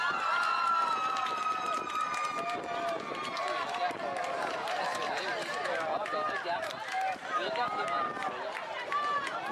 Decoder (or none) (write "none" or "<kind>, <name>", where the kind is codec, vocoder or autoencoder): none